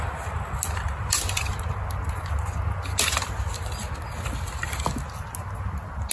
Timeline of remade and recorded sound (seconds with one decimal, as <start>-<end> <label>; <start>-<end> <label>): 0.0-0.9 recorded; 0.9-1.7 remade; 1.7-6.1 recorded

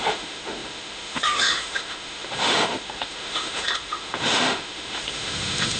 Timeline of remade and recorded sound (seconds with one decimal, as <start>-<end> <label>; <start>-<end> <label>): 0.0-5.8 remade

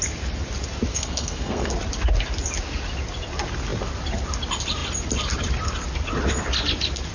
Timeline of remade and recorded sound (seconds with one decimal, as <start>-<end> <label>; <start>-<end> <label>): 0.0-0.9 recorded; 0.9-1.7 remade; 1.7-7.1 recorded

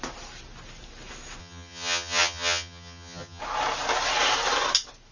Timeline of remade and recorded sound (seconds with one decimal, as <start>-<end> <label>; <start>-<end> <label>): 0.0-1.4 recorded; 1.4-3.4 remade; 3.4-5.1 recorded